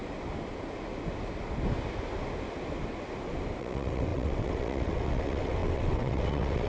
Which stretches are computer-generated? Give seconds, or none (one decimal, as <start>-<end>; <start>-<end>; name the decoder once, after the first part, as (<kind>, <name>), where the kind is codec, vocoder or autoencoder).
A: 3.6-6.7 (vocoder, WaveNeXt)